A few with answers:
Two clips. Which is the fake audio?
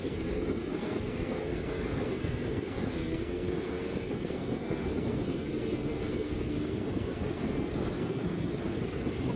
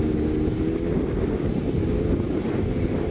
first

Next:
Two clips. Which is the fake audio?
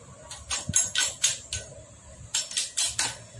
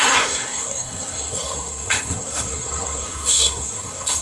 second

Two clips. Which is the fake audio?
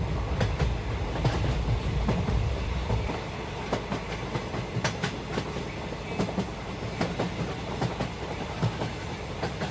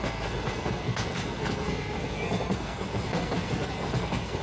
second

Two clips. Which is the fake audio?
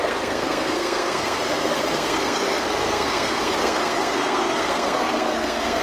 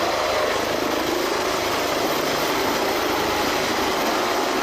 first